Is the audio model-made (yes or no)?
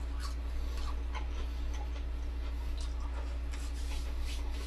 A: no